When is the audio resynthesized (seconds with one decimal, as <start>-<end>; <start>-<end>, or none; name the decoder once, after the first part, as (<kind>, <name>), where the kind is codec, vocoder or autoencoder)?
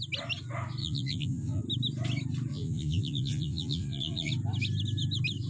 0.8-1.6 (vocoder, Vocos); 2.5-4.3